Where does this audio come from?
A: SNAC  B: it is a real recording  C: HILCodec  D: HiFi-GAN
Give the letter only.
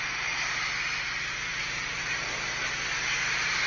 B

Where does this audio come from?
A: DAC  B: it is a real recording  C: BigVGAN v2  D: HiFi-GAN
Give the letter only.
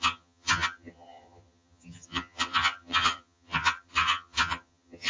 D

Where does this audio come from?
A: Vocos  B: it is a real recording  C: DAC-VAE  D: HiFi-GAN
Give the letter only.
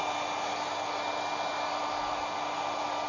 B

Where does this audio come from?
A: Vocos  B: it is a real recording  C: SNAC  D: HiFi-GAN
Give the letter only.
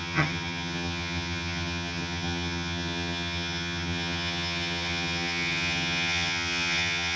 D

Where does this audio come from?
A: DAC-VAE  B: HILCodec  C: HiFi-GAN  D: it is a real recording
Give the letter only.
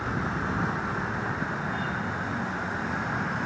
D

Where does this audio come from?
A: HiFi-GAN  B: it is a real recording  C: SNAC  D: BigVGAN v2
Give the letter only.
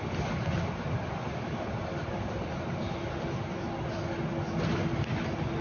B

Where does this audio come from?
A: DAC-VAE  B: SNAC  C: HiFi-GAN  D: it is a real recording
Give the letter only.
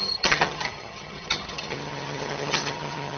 C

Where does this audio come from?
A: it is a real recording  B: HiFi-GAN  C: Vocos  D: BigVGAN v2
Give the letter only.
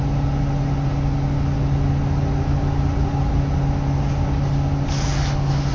A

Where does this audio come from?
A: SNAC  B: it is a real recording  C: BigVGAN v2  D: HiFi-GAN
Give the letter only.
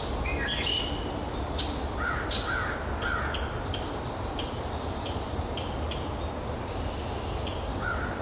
B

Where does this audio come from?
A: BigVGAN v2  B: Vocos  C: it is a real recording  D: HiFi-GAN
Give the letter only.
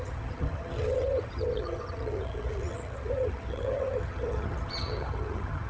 D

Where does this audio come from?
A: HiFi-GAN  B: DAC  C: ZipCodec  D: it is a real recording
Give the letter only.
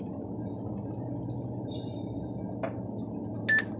D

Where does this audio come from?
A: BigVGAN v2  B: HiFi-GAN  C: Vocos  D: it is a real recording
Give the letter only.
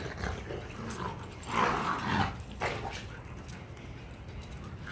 D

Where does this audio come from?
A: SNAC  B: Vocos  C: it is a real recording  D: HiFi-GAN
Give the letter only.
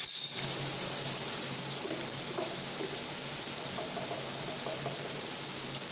C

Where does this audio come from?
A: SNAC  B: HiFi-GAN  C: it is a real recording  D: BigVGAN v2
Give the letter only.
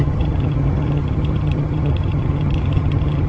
B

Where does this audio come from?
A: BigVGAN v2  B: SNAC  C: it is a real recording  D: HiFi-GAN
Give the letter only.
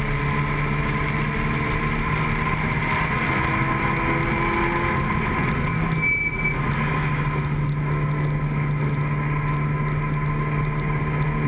C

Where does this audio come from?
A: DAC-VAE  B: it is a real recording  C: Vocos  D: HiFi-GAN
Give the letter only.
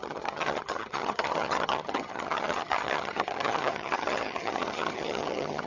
D